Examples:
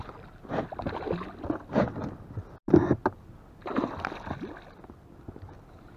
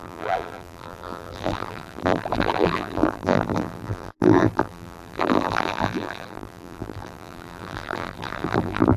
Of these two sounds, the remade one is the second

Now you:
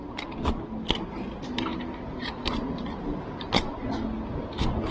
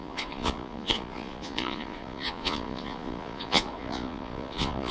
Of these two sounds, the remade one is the second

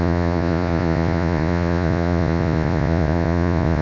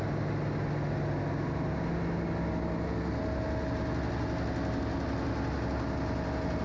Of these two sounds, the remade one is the first